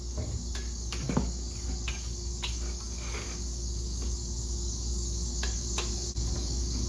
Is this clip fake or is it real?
fake